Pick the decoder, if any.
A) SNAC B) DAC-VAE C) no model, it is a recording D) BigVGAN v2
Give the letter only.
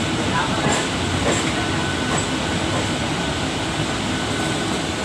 C